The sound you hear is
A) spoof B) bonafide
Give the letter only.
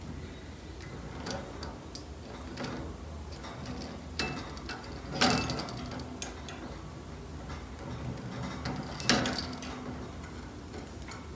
B